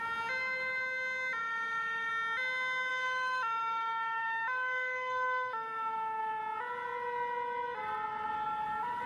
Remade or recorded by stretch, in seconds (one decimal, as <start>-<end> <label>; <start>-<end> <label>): 0.0-1.4 recorded; 1.4-2.1 remade; 2.1-2.9 recorded; 2.9-6.4 remade; 6.4-9.1 recorded